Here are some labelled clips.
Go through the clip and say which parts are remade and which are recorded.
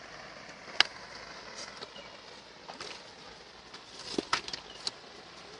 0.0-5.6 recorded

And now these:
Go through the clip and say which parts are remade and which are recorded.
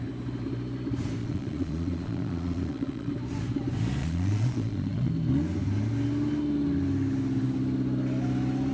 0.0-1.2 recorded; 1.2-3.1 remade; 3.1-4.0 recorded; 4.0-5.1 remade; 5.1-8.7 recorded